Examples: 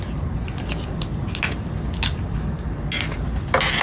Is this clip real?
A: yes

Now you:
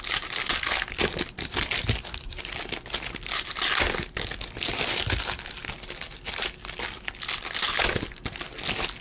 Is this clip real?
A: yes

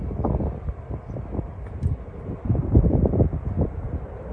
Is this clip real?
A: yes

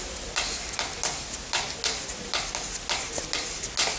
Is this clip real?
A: yes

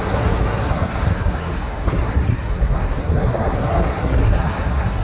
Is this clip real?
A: no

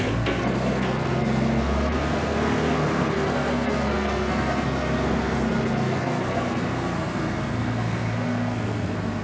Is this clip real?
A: no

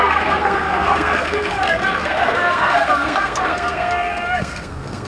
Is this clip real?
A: no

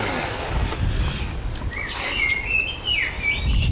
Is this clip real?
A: yes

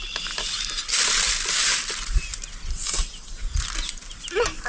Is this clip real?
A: yes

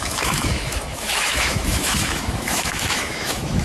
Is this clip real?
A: no